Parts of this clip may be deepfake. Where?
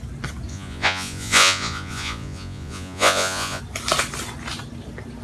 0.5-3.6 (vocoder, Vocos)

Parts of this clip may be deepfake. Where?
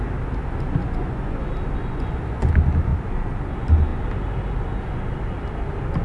0.8-1.4 (vocoder, Vocos); 1.8-2.5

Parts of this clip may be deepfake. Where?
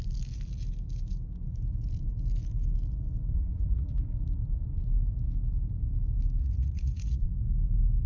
3.3-3.9 (vocoder, Vocos); 6.4-7.4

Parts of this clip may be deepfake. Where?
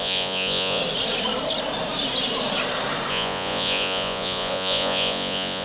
0.0-0.8 (vocoder, Vocos); 3.1-5.6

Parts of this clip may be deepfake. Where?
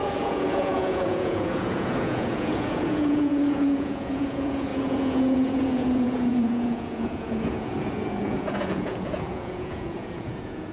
0.0-10.7 (vocoder, Vocos)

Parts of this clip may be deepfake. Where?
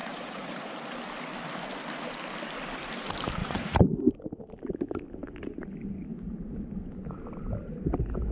0.0-0.7 (vocoder, Vocos); 3.4-4.0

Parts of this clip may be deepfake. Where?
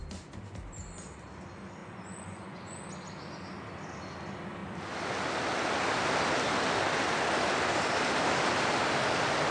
1.8-2.8 (vocoder, Vocos)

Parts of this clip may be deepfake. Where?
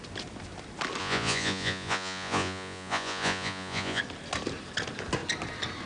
1.0-4.0 (vocoder, Vocos)